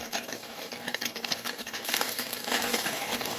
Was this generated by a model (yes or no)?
yes